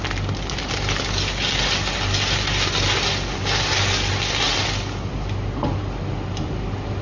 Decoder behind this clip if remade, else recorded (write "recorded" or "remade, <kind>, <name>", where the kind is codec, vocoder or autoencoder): recorded